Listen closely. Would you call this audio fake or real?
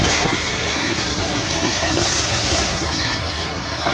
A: fake